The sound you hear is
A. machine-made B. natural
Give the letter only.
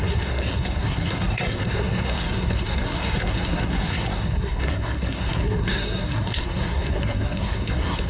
A